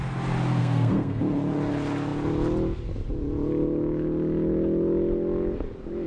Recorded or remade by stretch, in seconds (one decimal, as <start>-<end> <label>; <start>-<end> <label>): 0.0-0.6 recorded; 0.6-1.2 remade; 1.2-6.1 recorded